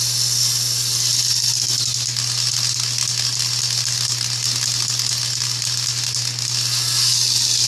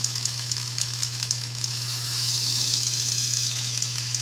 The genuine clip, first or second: first